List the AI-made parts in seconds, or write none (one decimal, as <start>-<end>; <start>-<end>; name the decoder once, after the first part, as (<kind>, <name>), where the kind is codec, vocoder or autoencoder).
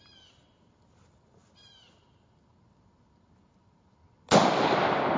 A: none